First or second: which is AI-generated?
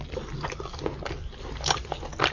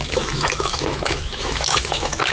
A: second